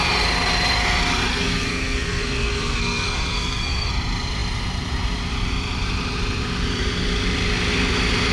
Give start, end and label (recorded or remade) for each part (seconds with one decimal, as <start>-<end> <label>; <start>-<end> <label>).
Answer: 0.0-1.3 recorded; 1.3-3.9 remade; 3.9-8.3 recorded